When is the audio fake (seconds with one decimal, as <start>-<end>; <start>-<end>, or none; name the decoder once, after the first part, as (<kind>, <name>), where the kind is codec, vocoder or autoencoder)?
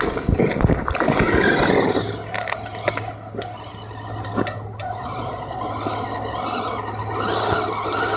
5.0-5.7 (vocoder, Vocos)